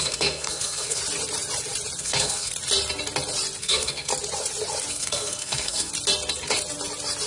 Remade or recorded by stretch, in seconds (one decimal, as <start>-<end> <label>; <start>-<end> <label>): 0.0-1.0 remade; 1.0-2.0 recorded; 2.0-2.5 remade; 2.5-3.6 recorded; 3.6-4.1 remade; 4.1-4.9 recorded; 4.9-5.9 remade; 5.9-7.3 recorded